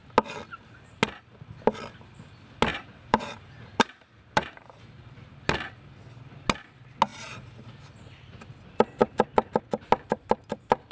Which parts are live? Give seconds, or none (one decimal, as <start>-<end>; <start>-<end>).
0.0-2.7; 5.0-7.1; 7.7-9.0; 9.6-10.9